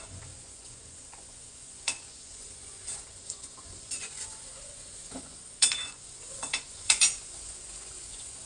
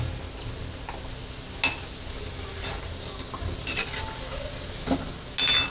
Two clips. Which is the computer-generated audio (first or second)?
first